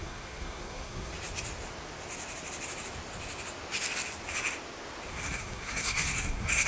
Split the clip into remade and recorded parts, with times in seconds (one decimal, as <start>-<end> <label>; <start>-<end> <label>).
0.0-1.1 remade; 1.1-5.1 recorded; 5.1-6.7 remade

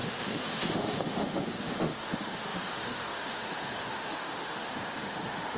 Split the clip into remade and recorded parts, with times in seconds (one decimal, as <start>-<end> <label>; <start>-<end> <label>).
0.0-5.6 remade

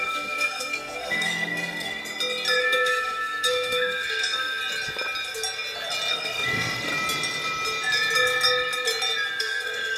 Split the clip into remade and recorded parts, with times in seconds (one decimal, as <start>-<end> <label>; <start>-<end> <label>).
0.0-2.0 remade; 2.0-2.6 recorded; 2.6-4.6 remade; 4.6-6.1 recorded; 6.1-6.9 remade; 6.9-9.4 recorded; 9.4-10.0 remade